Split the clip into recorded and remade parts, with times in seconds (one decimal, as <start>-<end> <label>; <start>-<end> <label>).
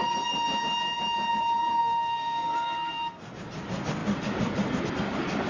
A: 0.0-1.8 recorded; 1.8-3.3 remade; 3.3-5.5 recorded